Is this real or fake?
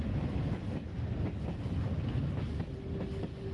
real